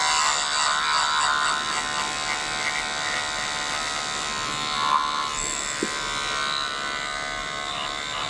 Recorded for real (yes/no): yes